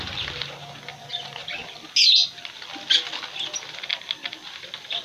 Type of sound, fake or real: real